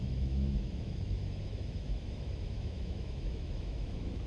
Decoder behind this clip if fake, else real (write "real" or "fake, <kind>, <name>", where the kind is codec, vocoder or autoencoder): fake, autoencoder, DAC-VAE